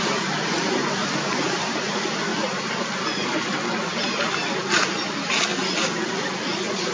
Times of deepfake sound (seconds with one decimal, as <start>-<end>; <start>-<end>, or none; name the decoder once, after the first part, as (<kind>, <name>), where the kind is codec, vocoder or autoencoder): none